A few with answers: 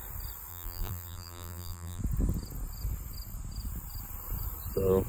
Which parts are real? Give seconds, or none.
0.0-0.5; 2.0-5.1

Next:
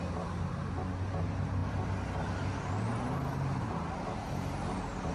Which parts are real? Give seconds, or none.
0.0-5.1

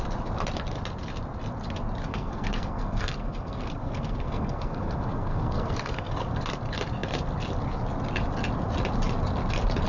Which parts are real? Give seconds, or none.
0.0-2.1; 6.1-9.9

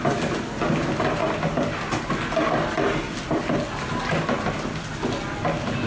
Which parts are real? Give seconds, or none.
0.0-5.9